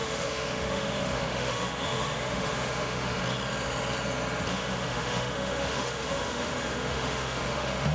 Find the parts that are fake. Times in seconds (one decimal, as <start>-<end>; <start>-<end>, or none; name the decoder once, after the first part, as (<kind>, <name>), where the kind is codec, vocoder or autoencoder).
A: 0.0-3.2 (autoencoder, DAC-VAE); 4.5-7.9